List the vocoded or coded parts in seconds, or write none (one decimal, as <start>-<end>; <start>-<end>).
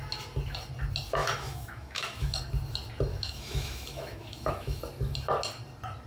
1.2-2.4; 3.1-4.8